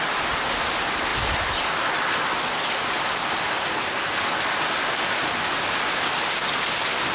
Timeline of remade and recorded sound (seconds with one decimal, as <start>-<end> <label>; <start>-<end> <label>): 0.0-7.1 recorded